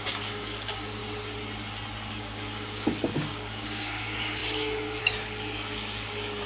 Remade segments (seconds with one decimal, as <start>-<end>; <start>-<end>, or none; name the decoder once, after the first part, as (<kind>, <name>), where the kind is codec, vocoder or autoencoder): 0.0-1.0 (codec, DAC); 2.1-6.5